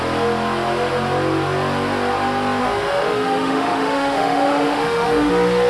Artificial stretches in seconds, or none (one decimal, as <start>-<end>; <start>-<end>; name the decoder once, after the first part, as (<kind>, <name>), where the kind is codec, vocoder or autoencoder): 2.6-5.3 (autoencoder, DAC-VAE)